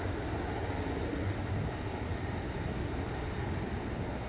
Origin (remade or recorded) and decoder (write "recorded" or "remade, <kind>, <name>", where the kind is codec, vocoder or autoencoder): recorded